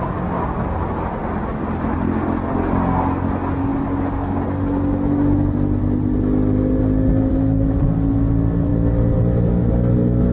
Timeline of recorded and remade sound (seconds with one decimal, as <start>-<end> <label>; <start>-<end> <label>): 0.0-10.3 recorded